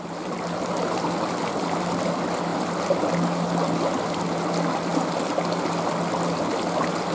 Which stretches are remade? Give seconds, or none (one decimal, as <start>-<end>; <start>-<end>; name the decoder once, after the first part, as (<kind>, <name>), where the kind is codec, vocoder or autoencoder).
none